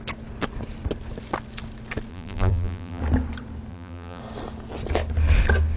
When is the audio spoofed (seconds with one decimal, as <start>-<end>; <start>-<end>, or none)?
2.1-3.0; 3.7-4.2